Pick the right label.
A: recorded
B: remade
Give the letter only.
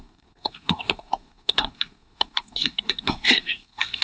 B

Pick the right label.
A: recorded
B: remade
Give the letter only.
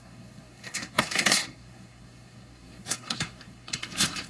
B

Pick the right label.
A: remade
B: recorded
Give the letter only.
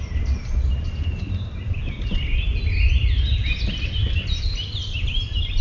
B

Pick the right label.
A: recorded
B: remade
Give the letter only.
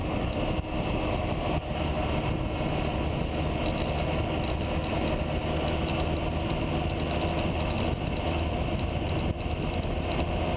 A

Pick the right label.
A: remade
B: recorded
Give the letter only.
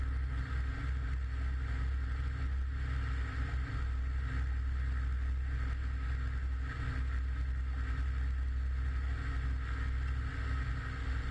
B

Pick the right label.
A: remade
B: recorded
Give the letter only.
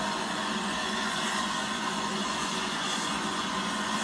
A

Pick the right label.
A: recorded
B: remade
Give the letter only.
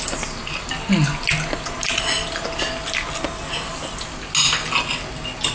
A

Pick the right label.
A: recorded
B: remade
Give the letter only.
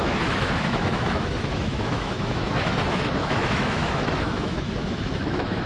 B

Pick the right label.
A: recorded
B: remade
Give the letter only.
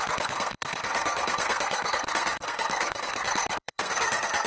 B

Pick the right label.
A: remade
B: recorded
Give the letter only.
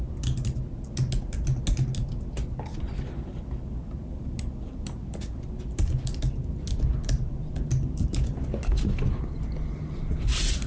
B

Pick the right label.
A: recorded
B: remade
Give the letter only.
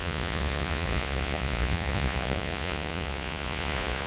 B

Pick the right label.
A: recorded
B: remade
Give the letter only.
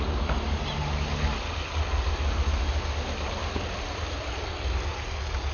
A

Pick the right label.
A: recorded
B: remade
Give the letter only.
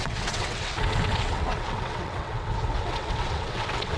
B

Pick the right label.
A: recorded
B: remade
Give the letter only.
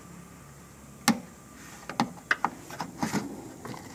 A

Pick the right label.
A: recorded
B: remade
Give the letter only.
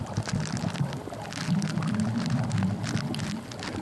A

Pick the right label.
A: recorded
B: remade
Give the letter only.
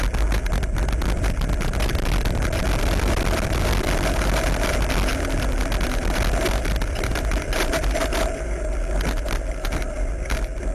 A